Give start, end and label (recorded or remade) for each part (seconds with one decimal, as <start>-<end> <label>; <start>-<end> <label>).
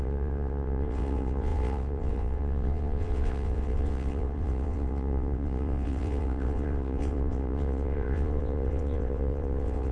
0.0-9.9 remade